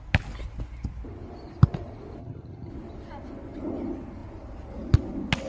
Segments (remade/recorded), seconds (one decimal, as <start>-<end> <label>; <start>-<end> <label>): 0.0-2.2 recorded; 2.2-2.7 remade; 2.7-5.5 recorded